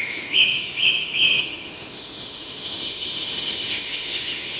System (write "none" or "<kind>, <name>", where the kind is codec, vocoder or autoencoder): autoencoder, DAC-VAE